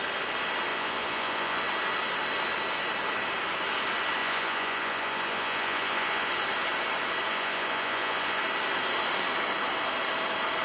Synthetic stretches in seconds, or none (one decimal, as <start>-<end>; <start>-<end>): 0.7-1.6; 4.2-6.3; 7.3-8.4